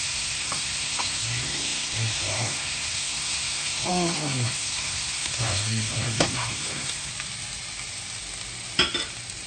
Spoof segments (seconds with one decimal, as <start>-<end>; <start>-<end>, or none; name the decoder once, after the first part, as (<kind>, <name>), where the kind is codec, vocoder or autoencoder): 0.0-7.1 (codec, SNAC)